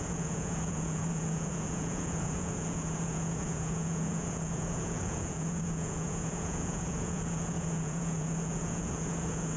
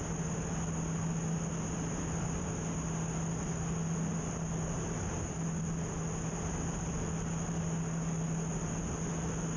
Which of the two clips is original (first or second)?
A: second